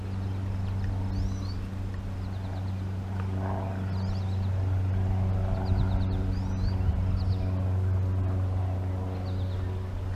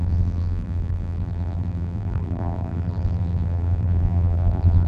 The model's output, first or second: second